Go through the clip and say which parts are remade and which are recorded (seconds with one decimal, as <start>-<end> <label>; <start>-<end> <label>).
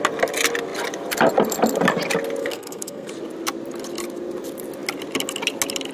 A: 0.0-2.4 recorded; 2.4-3.1 remade; 3.1-5.9 recorded